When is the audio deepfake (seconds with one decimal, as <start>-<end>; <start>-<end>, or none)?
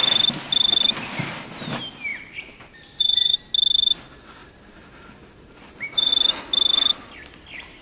1.1-1.7; 2.1-3.5; 4.4-6.1